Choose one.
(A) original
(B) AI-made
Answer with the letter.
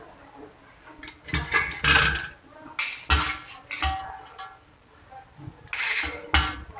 A